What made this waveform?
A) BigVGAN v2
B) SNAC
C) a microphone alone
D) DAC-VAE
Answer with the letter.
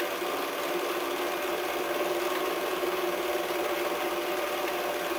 C